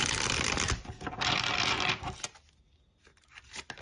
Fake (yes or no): no